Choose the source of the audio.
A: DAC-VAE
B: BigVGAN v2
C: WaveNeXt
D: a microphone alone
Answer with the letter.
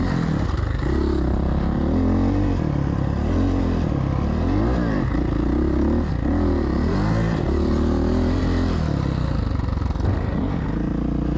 D